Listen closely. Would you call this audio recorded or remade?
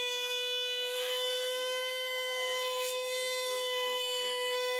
remade